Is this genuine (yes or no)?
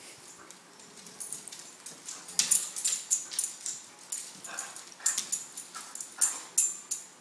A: yes